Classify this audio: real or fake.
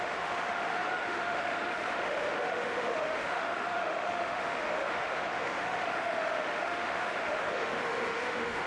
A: fake